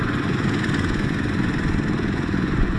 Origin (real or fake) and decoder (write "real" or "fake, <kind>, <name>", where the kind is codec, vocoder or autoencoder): fake, vocoder, Vocos